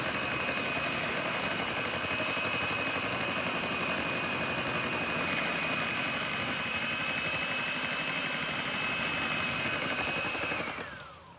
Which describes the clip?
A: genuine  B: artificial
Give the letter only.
B